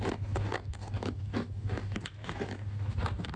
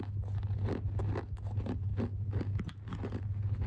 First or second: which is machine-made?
first